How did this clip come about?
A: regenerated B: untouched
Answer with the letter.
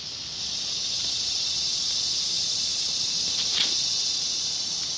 B